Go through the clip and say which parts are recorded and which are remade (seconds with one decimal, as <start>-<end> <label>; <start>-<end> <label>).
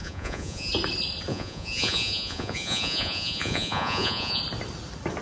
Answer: 0.0-0.7 remade; 0.7-1.3 recorded; 1.3-4.4 remade; 4.4-5.2 recorded